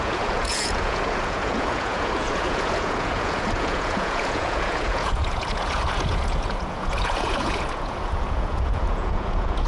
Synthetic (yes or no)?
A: yes